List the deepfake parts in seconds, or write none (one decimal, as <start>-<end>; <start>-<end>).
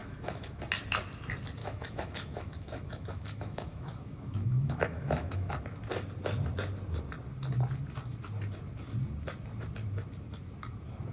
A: 0.0-0.6; 1.6-5.5